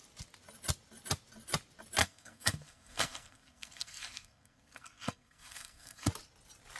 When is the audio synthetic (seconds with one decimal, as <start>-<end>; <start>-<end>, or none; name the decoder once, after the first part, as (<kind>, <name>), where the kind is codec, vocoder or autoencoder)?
2.0-6.1 (codec, SNAC)